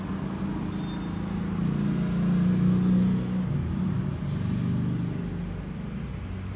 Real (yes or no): yes